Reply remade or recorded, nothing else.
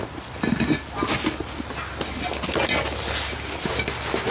recorded